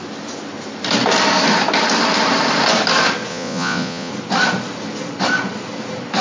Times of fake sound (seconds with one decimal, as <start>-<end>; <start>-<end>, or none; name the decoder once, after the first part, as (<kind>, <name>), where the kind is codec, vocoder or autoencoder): 3.3-4.1 (vocoder, Vocos)